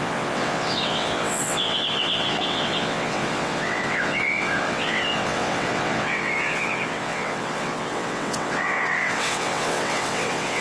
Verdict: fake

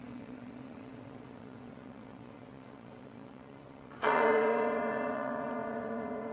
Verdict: fake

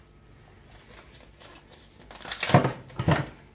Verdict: real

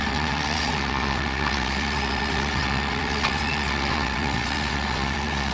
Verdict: fake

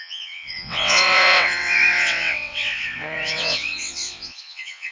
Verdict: fake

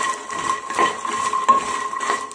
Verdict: real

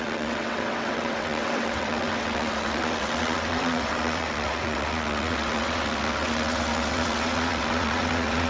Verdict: fake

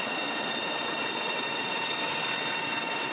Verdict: fake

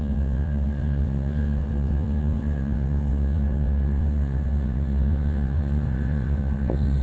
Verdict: fake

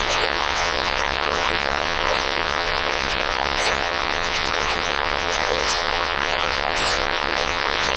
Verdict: fake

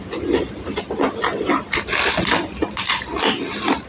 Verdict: real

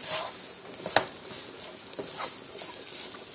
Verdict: real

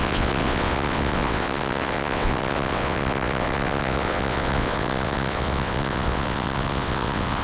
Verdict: fake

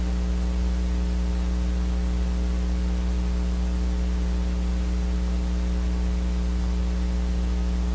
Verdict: real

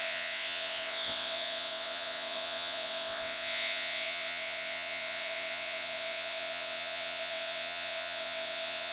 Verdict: fake